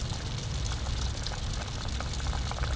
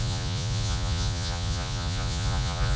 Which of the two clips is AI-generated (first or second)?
second